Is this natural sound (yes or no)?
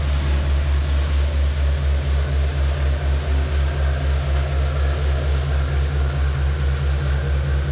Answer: yes